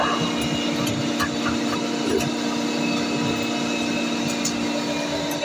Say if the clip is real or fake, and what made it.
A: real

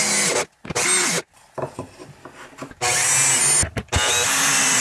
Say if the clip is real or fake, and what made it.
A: real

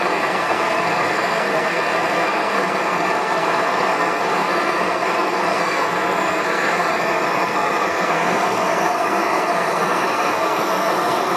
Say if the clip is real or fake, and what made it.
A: fake, codec, SNAC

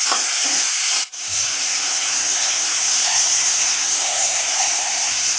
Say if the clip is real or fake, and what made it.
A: fake, codec, SNAC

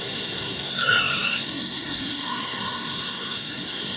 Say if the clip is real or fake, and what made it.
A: fake, codec, SNAC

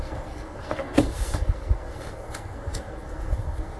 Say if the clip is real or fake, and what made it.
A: fake, codec, SNAC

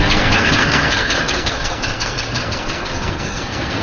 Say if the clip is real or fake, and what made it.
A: fake, codec, SNAC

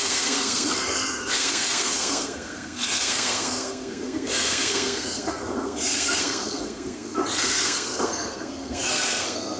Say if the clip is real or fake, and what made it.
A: fake, codec, SNAC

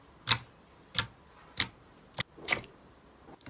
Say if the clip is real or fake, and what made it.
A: real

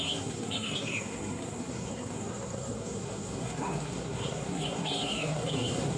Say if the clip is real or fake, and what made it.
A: fake, codec, SNAC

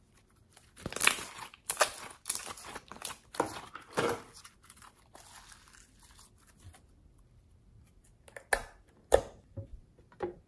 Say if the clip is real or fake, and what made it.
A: real